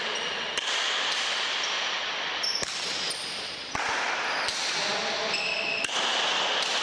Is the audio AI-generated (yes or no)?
no